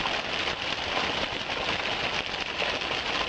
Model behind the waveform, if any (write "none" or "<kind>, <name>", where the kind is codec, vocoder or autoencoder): none